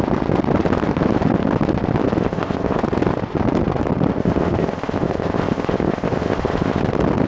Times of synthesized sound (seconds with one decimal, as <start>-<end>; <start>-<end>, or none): 2.2-2.8; 4.2-6.8